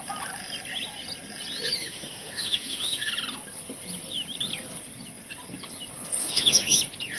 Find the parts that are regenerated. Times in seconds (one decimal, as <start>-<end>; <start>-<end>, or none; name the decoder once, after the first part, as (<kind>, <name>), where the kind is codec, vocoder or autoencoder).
1.8-3.1 (autoencoder, DAC-VAE); 6.2-6.8